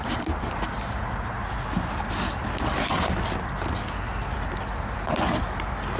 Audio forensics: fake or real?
real